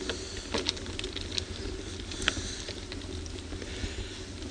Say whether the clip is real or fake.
real